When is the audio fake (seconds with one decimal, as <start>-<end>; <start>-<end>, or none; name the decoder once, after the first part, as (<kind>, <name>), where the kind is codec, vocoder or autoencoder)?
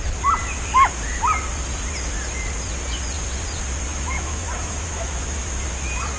3.9-5.2 (autoencoder, DAC-VAE)